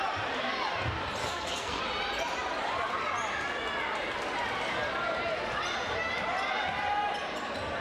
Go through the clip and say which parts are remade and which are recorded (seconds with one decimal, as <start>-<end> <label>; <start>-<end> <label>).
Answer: 0.0-1.2 recorded; 1.2-1.8 remade; 1.8-7.8 recorded